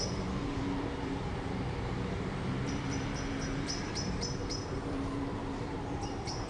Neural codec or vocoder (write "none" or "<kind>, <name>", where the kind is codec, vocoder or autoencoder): vocoder, BigVGAN v2